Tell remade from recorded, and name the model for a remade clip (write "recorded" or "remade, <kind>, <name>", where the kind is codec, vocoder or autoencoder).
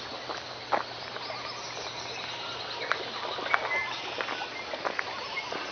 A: recorded